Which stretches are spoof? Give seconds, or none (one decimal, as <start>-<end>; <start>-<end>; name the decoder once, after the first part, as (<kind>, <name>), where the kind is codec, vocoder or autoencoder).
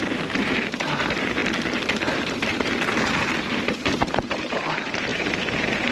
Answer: 0.0-1.4 (vocoder, BigVGAN v2); 2.2-5.9